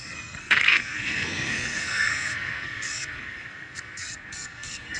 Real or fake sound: fake